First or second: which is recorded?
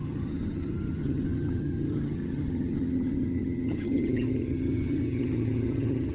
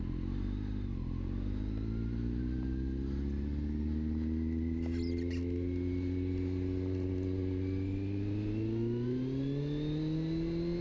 second